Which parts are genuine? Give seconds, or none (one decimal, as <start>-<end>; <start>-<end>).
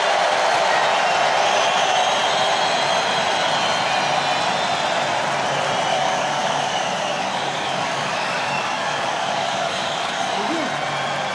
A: 0.0-5.9; 10.5-11.3